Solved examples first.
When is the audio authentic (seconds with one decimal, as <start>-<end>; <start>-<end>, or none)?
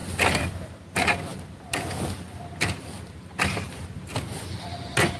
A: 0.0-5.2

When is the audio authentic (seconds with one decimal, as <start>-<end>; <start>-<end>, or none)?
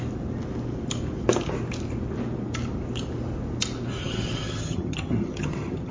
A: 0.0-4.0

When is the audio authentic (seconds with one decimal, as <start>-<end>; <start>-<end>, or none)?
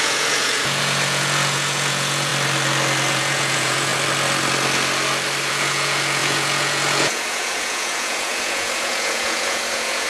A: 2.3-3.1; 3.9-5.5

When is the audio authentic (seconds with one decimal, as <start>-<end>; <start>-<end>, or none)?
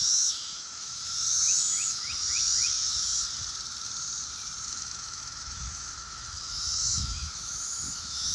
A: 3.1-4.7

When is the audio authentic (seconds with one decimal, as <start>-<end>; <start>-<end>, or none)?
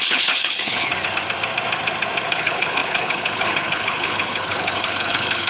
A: 0.9-2.3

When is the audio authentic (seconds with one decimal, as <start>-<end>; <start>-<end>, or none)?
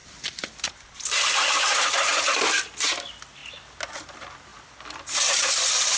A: 0.7-2.1; 2.7-4.5; 5.5-6.0